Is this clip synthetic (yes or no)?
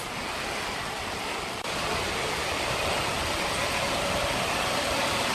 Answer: no